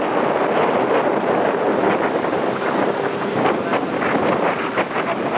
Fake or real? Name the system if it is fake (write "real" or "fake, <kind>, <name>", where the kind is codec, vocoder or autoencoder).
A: real